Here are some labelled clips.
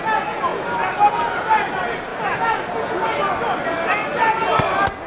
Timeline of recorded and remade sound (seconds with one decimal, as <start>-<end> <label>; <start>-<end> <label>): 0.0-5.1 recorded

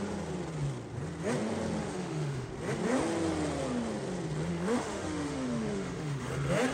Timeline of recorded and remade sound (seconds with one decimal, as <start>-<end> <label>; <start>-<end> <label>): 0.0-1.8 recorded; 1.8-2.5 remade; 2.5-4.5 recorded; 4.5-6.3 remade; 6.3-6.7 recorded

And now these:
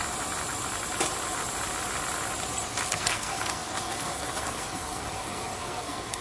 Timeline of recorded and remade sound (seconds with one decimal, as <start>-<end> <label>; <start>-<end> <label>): 0.0-2.9 recorded; 2.9-6.2 remade

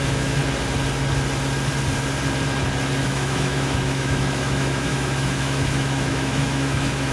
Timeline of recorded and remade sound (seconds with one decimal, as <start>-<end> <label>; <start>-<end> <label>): 0.0-0.4 remade; 0.4-3.0 recorded; 3.0-7.1 remade

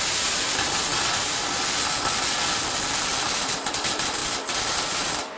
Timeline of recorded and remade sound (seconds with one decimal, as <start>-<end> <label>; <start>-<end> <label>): 0.0-5.4 recorded